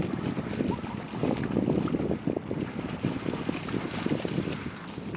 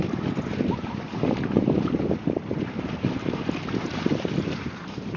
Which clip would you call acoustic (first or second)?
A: first